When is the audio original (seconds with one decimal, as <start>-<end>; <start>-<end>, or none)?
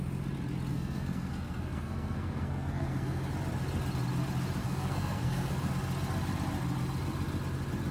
0.0-0.7; 3.3-4.6; 5.7-7.9